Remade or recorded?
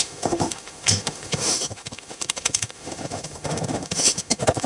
remade